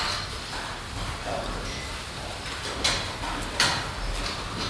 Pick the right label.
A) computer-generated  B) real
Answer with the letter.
B